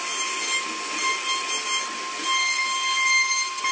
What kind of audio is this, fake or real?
real